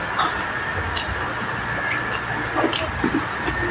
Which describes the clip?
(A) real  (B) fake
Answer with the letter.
A